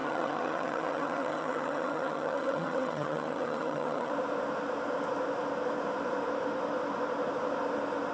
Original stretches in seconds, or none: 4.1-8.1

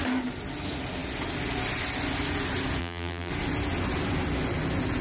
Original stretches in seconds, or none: 0.0-2.8; 3.3-5.0

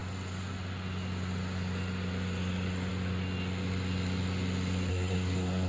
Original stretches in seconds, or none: 0.0-4.9